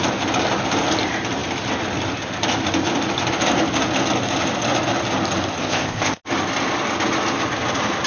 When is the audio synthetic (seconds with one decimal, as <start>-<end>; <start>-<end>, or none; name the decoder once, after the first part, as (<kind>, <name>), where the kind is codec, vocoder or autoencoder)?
5.6-6.2 (codec, ZipCodec)